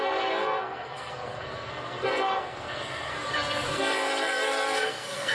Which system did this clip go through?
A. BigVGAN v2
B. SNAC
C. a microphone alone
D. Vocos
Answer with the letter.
B